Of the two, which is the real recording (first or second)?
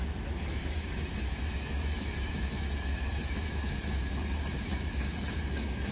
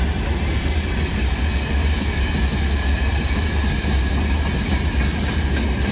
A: second